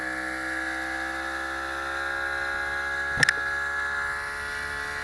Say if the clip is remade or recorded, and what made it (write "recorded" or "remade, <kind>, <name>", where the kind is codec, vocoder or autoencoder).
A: recorded